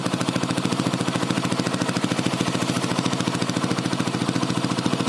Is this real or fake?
real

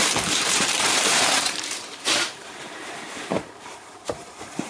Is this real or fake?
fake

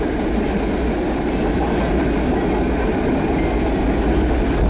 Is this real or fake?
real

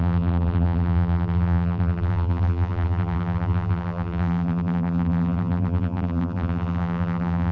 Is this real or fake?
fake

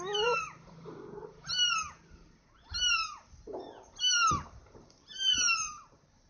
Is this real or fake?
fake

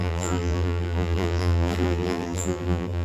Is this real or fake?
fake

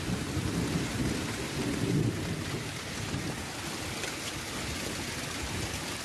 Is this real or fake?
real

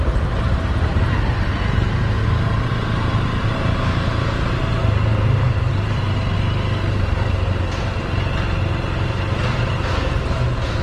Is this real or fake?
real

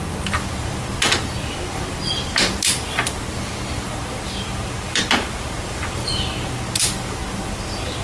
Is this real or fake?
fake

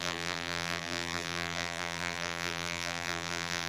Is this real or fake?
fake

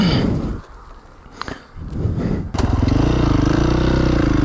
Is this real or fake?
fake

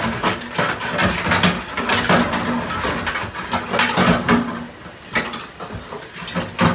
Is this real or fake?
real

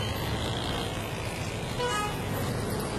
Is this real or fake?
real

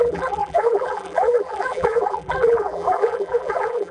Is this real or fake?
fake